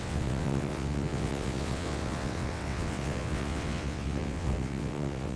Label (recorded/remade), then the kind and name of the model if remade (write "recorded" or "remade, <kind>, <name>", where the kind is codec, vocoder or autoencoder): remade, vocoder, WaveNeXt